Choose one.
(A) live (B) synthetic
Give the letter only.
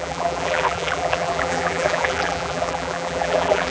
B